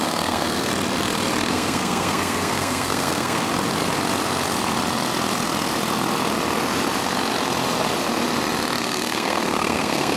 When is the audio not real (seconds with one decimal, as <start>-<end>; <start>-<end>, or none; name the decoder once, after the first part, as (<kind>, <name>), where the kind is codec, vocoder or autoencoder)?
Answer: 0.0-0.7 (codec, SNAC); 1.5-3.5; 8.8-10.2